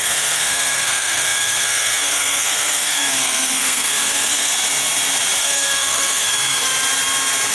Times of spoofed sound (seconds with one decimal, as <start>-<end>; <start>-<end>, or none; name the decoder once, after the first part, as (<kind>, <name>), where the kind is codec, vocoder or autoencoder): 0.0-4.5 (codec, SNAC); 5.4-6.7